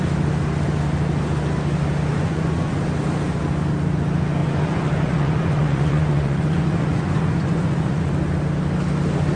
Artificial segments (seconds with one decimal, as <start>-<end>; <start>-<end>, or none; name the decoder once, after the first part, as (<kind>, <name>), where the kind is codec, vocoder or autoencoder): 2.2-2.8 (vocoder, Vocos); 4.4-8.1